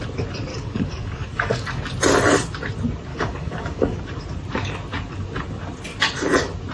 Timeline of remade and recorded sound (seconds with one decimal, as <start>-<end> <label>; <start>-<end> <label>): 0.0-0.5 recorded; 0.5-1.8 remade; 1.8-3.1 recorded; 3.1-4.0 remade; 4.0-6.7 recorded